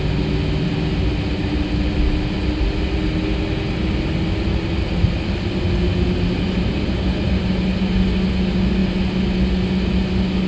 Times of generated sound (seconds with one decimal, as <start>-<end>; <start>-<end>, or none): none